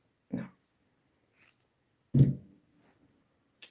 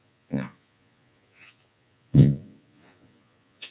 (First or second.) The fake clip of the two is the second